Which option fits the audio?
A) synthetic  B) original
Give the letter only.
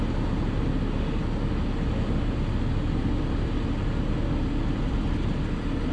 B